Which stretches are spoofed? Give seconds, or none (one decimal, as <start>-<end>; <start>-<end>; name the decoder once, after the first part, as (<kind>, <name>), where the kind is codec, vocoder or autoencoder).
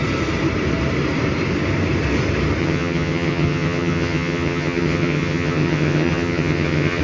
2.6-7.0 (vocoder, HiFi-GAN)